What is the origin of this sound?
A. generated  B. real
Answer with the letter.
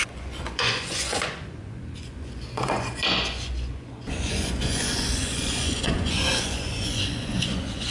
A